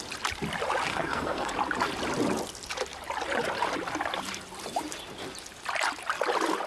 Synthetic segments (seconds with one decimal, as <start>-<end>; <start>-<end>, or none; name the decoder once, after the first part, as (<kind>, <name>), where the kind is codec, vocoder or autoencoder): 0.9-1.5 (codec, SNAC)